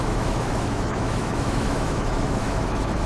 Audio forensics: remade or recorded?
remade